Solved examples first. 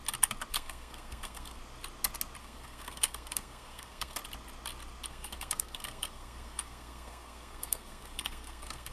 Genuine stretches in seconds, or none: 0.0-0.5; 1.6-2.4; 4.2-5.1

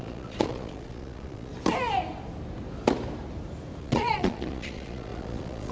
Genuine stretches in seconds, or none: 1.5-3.8

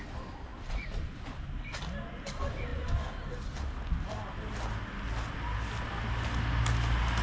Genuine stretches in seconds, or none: 0.0-7.2

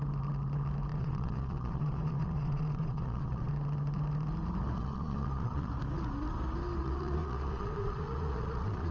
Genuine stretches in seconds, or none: 0.0-0.9; 3.5-4.8; 5.7-6.8

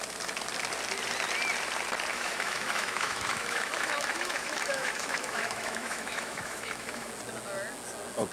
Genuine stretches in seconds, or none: 0.0-2.1; 7.1-8.3